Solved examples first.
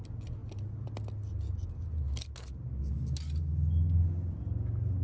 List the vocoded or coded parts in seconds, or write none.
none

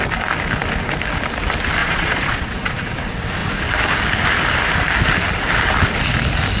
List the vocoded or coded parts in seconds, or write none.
1.8-2.9 (vocoder, Vocos)

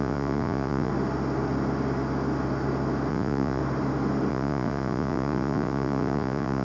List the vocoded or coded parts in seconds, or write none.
0.0-0.9 (vocoder, Vocos); 3.1-3.6; 4.3-6.6